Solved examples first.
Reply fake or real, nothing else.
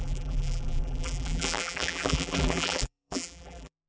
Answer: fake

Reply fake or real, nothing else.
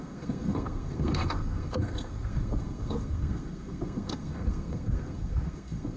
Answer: fake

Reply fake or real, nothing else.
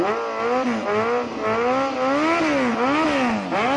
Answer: real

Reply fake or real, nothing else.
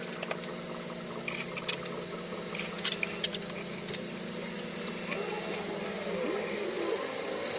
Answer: real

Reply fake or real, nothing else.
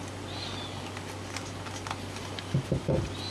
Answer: real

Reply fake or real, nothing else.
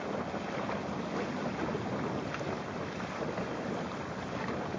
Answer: real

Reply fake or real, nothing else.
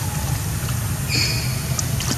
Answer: real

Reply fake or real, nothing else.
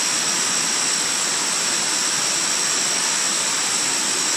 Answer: real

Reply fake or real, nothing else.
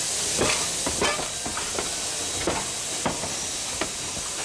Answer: real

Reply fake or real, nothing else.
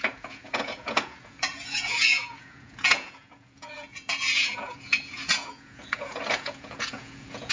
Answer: fake